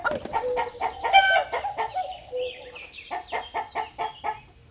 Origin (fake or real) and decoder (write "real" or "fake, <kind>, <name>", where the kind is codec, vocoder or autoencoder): real